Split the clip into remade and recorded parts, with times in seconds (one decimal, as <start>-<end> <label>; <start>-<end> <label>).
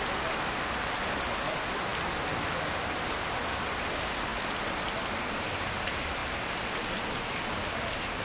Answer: 0.0-8.2 recorded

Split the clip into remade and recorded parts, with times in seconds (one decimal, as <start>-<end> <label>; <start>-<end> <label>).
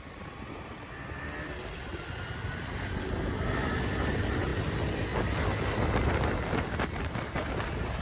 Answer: 0.0-8.0 recorded